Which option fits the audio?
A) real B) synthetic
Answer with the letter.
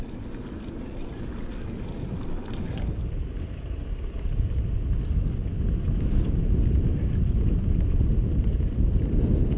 A